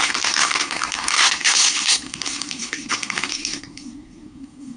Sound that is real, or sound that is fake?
fake